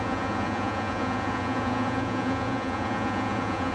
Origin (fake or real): fake